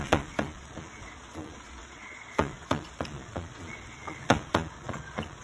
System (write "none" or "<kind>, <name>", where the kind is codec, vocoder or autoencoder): vocoder, Vocos